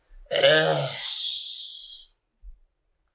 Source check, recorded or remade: recorded